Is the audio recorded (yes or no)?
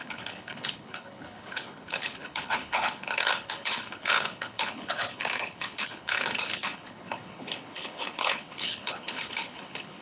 no